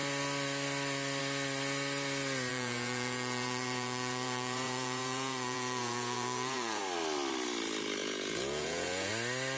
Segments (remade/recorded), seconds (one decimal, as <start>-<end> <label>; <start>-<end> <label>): 0.0-2.5 recorded; 2.5-6.8 remade; 6.8-8.0 recorded; 8.0-9.1 remade; 9.1-9.6 recorded